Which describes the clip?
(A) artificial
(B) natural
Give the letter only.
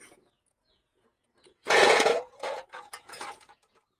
A